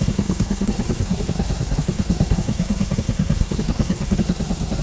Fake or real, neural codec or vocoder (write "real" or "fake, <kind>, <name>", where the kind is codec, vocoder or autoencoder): fake, codec, SNAC